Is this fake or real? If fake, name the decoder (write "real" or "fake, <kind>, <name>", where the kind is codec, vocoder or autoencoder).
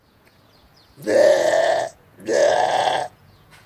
fake, vocoder, Vocos